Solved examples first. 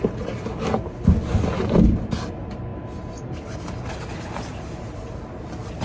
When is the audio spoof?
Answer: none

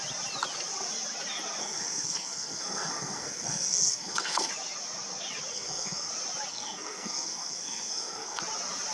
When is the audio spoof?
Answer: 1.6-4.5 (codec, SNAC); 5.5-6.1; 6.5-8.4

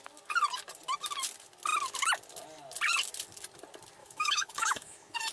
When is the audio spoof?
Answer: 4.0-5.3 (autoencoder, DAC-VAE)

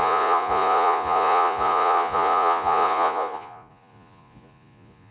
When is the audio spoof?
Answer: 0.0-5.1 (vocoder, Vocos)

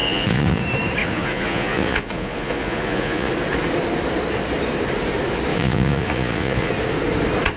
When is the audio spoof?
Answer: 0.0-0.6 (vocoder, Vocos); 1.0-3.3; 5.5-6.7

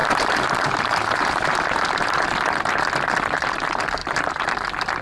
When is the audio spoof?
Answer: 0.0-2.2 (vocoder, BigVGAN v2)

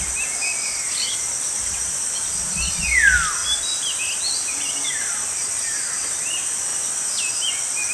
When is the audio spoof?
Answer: none